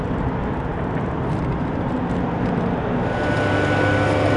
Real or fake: real